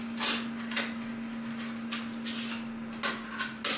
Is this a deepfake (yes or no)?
no